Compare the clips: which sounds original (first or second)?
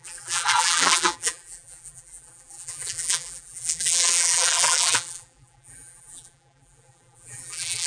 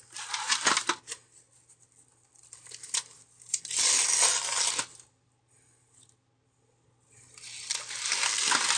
second